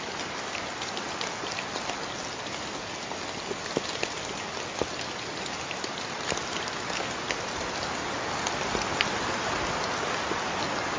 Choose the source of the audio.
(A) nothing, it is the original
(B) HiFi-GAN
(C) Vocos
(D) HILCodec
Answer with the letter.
A